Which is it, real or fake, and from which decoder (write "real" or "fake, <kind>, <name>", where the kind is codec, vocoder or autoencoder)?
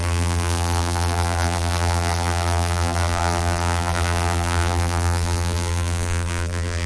fake, vocoder, BigVGAN v2